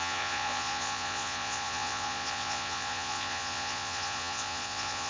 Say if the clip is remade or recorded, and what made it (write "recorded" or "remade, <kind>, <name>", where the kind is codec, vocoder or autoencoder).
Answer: remade, vocoder, Vocos